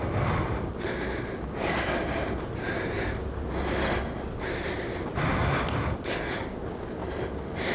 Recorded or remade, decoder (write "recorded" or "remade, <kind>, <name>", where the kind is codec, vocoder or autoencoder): recorded